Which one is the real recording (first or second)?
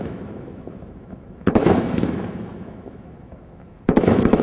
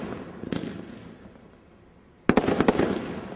second